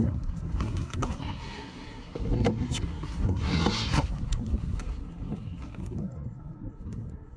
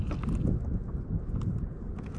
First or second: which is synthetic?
first